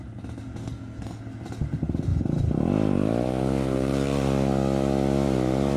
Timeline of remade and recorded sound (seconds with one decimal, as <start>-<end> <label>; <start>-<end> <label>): 0.0-0.6 recorded; 0.6-1.2 remade; 1.2-5.8 recorded